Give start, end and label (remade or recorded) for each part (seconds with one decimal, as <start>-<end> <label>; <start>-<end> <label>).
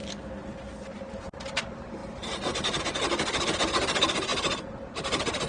0.0-5.5 recorded